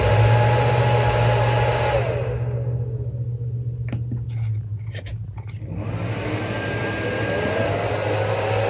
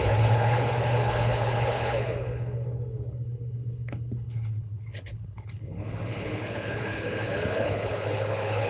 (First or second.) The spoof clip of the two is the second